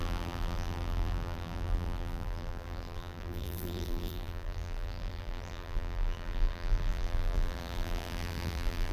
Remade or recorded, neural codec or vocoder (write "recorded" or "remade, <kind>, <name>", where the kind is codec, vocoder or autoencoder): remade, vocoder, BigVGAN v2